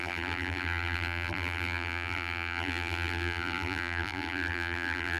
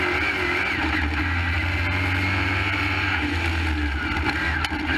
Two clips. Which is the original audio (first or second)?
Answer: second